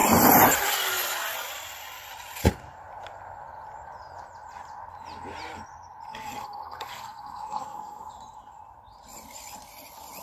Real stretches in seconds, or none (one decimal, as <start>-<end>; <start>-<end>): 0.0-6.1; 8.1-10.2